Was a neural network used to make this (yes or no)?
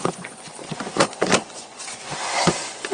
yes